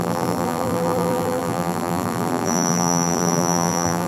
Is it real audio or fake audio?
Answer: fake